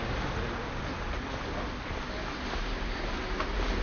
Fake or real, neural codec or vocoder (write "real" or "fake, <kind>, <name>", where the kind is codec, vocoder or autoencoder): real